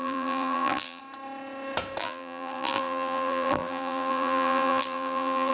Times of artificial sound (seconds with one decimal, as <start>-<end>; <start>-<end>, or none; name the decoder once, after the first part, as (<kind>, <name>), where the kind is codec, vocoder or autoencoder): 0.0-1.0 (vocoder, BigVGAN v2); 2.0-5.5